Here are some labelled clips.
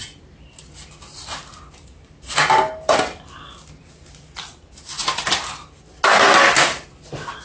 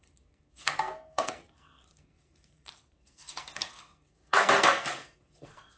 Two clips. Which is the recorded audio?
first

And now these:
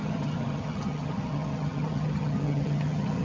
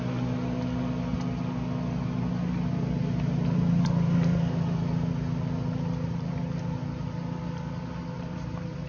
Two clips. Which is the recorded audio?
second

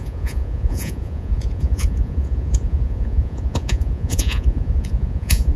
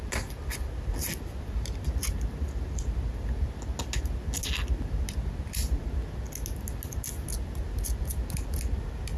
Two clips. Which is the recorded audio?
second